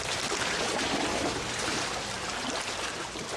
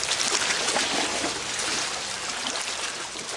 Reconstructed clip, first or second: first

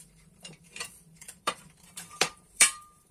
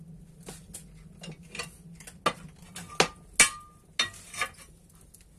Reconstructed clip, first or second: first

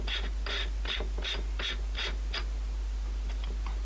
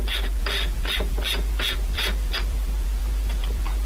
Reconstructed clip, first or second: second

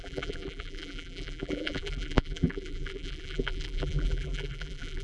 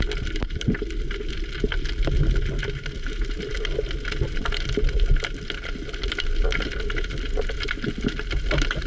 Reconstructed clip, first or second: first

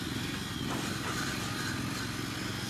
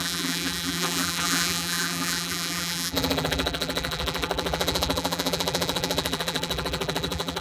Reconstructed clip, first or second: second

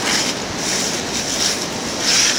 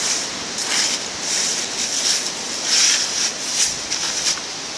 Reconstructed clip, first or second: second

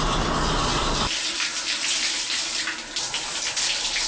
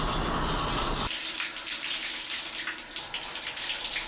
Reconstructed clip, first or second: second